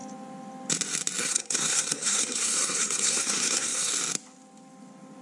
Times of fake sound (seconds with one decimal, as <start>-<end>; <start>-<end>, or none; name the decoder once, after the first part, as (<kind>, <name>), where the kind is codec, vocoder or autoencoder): 1.2-3.9 (codec, SNAC)